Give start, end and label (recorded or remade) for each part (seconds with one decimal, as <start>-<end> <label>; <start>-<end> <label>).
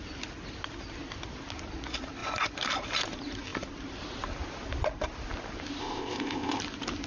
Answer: 0.0-5.8 recorded; 5.8-6.6 remade; 6.6-7.1 recorded